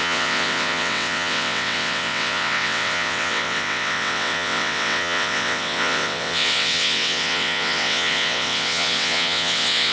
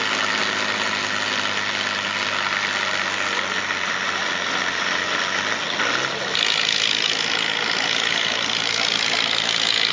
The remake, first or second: first